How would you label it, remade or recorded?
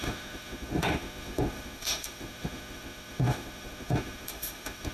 remade